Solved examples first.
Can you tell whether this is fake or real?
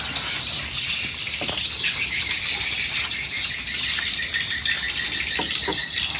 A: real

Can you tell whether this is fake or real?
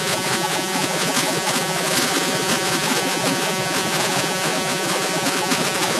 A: fake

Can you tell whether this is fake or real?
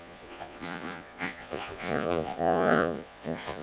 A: fake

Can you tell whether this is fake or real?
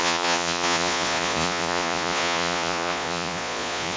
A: fake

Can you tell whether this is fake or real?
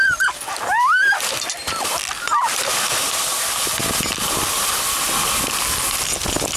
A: real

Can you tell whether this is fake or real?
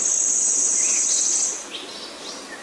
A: real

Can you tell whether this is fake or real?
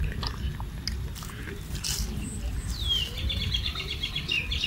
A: real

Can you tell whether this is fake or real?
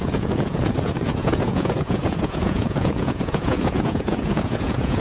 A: fake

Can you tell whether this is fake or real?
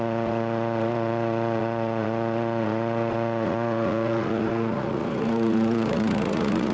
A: fake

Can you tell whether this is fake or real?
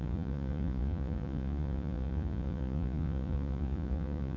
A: fake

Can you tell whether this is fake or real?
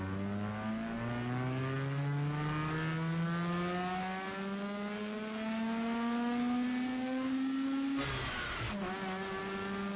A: real